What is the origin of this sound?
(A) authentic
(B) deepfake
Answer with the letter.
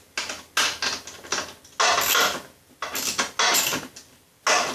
A